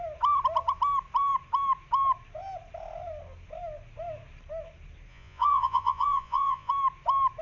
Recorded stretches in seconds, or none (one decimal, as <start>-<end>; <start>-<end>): 0.0-5.1; 6.7-7.4